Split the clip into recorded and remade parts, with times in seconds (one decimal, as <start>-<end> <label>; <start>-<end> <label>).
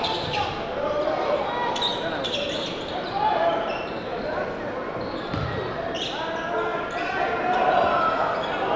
0.0-8.8 recorded